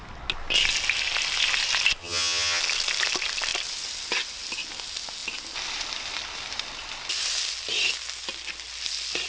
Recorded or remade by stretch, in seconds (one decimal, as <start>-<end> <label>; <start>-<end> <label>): 0.0-2.0 recorded; 2.0-2.6 remade; 2.6-9.3 recorded

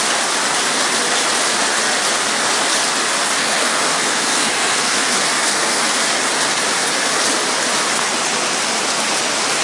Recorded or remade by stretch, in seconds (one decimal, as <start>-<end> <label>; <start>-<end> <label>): 0.0-3.4 recorded; 3.4-5.8 remade; 5.8-9.6 recorded

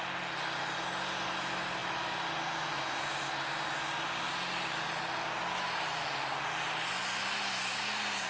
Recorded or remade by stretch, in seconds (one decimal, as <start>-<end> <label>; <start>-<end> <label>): 0.0-8.3 recorded

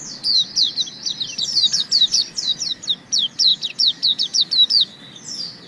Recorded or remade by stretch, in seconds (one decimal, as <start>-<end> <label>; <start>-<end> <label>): 0.0-3.5 recorded; 3.5-4.4 remade; 4.4-5.7 recorded

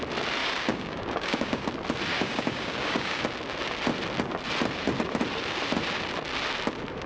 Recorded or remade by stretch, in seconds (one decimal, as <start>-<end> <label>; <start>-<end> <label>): 0.0-0.4 recorded; 0.4-1.7 remade; 1.7-2.1 recorded; 2.1-3.2 remade; 3.2-7.1 recorded

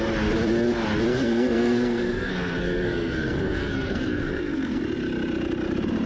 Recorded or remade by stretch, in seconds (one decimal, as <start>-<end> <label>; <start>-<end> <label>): 0.0-1.1 recorded; 1.1-4.8 remade; 4.8-6.1 recorded

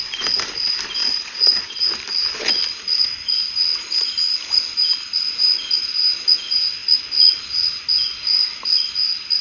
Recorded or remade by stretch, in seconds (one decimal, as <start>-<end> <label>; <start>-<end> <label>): 0.0-1.0 recorded; 1.0-1.8 remade; 1.8-9.4 recorded